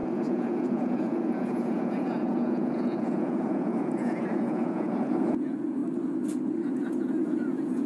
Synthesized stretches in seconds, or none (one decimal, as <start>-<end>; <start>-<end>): 0.0-5.8; 6.7-7.9